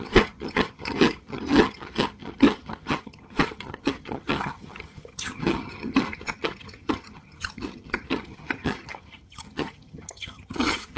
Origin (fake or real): fake